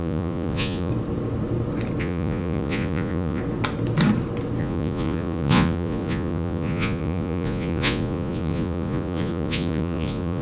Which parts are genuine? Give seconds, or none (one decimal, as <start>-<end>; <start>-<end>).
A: 0.9-2.0; 3.4-4.6